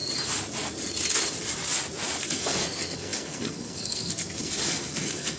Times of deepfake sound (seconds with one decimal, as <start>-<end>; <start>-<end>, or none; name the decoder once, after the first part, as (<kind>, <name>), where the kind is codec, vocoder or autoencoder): 2.2-5.4 (codec, SNAC)